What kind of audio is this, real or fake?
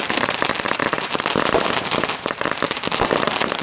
fake